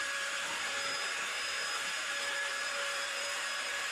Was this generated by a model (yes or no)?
yes